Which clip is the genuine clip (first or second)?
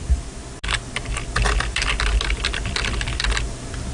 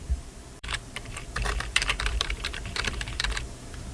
first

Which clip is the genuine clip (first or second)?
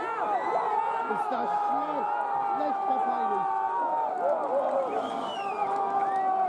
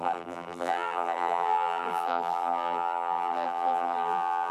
first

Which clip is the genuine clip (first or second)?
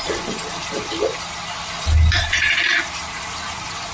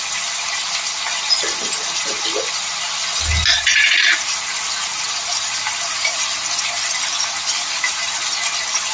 second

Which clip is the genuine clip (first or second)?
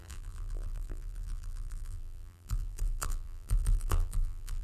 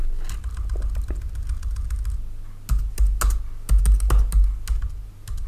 second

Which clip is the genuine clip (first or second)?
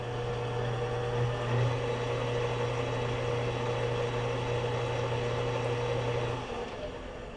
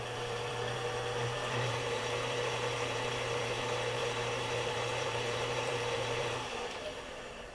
first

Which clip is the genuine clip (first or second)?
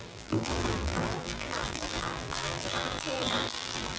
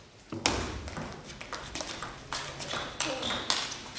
second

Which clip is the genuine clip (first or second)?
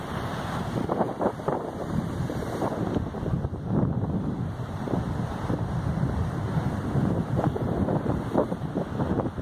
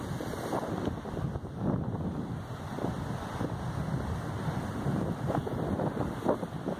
second